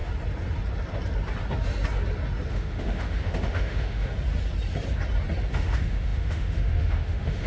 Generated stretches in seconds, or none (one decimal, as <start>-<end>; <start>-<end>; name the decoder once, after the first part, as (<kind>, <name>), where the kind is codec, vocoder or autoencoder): 2.5-4.1 (autoencoder, DAC-VAE); 5.5-7.5